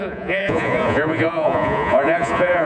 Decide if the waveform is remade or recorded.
remade